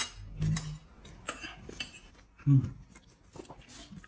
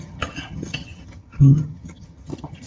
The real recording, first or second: first